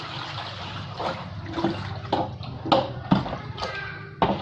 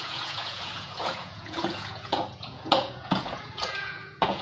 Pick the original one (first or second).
first